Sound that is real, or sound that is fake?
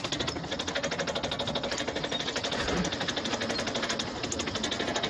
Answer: real